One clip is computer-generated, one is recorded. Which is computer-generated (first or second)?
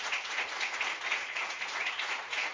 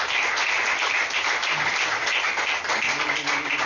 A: first